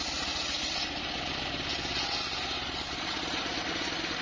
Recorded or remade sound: recorded